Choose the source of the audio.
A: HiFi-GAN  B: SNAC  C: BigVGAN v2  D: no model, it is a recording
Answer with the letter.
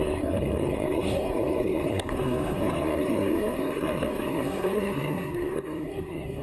B